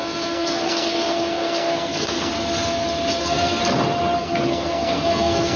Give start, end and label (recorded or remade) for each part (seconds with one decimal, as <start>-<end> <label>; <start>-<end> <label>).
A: 0.0-2.3 remade; 2.3-3.2 recorded; 3.2-3.6 remade; 3.6-4.2 recorded; 4.2-5.6 remade